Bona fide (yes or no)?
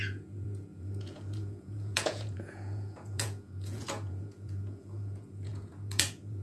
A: no